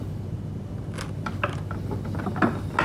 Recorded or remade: recorded